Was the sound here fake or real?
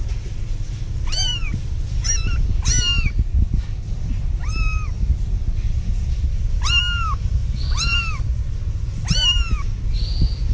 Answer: real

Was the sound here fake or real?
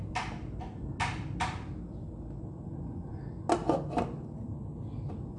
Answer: real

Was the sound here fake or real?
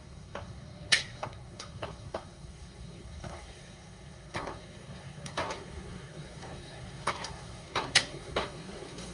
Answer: fake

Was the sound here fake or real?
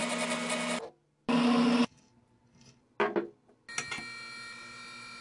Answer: real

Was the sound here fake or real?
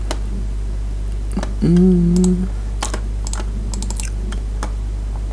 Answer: real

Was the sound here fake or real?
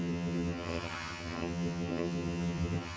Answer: fake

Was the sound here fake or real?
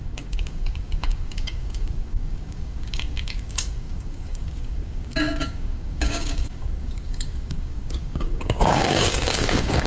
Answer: fake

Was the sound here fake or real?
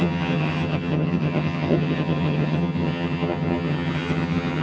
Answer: fake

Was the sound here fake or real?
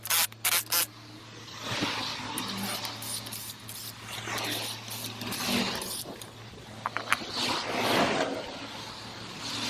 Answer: real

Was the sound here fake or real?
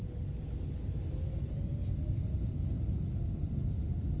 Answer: real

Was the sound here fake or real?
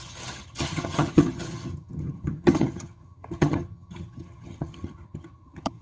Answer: fake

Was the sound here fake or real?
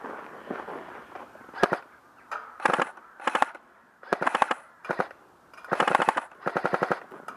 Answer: real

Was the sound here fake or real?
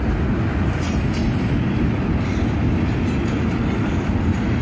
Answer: real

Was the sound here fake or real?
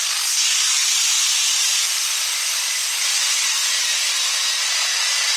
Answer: real